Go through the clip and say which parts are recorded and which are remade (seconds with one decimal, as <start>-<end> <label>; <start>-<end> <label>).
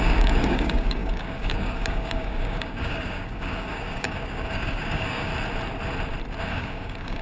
0.0-5.3 remade; 5.3-6.4 recorded; 6.4-7.2 remade